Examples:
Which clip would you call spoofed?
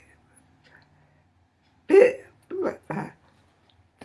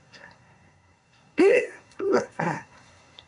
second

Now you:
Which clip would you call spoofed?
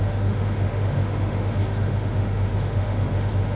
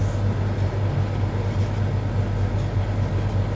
first